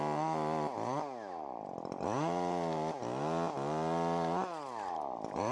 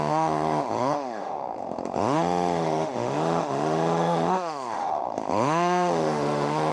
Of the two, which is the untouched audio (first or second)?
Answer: first